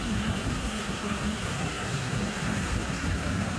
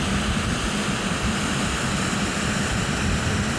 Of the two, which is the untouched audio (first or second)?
second